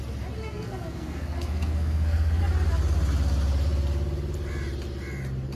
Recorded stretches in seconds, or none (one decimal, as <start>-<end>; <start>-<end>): 0.0-0.4; 2.4-5.6